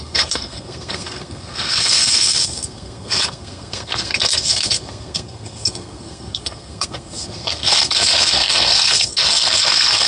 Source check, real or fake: fake